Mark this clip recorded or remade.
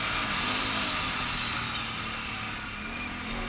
recorded